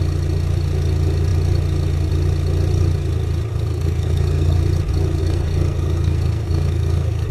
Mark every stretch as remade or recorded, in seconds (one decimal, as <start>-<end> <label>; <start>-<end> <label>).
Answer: 0.0-3.5 recorded; 3.5-4.6 remade; 4.6-5.2 recorded; 5.2-7.3 remade